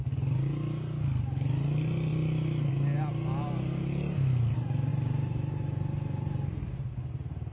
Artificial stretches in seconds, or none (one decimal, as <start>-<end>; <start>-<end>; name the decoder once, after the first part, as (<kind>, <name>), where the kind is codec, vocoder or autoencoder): none